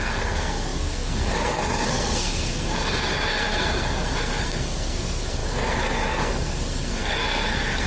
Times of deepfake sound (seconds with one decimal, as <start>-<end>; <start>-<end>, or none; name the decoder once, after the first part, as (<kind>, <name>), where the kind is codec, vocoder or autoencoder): 0.0-7.9 (codec, SNAC)